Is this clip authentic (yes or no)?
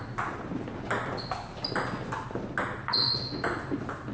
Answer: yes